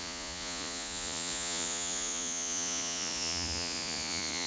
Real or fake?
fake